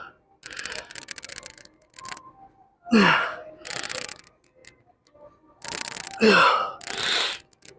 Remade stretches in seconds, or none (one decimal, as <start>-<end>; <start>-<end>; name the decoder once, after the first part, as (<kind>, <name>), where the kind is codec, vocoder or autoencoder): none